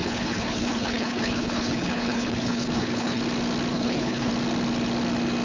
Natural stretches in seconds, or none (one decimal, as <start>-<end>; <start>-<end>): 3.2-3.7; 4.3-5.4